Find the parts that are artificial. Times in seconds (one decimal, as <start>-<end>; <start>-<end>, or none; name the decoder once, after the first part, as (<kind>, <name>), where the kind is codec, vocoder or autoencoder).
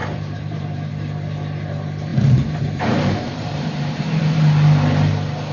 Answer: 0.0-0.9 (vocoder, BigVGAN v2); 2.1-4.0